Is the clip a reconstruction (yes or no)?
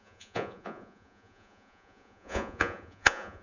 yes